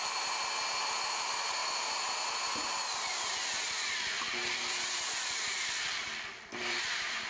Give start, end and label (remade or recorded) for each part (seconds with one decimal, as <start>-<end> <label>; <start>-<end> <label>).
0.0-6.6 recorded; 6.6-7.3 remade